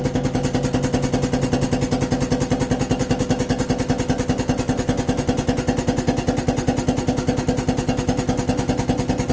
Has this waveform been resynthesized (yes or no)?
no